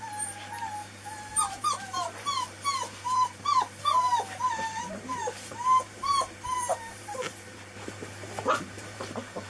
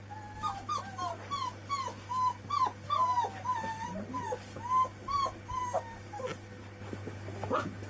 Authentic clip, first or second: second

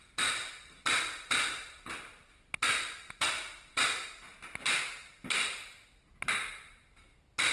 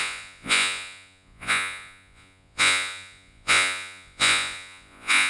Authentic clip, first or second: first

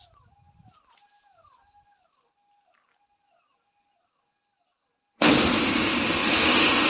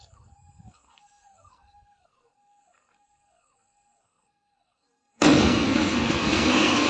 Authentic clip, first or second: first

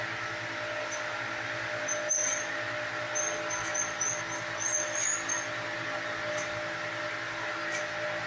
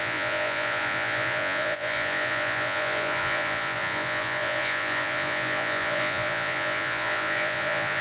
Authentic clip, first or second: first